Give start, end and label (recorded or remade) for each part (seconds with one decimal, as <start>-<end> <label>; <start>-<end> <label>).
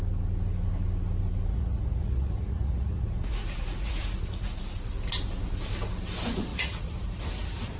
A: 0.0-1.5 recorded; 1.5-4.5 remade; 4.5-6.5 recorded; 6.5-7.1 remade; 7.1-7.8 recorded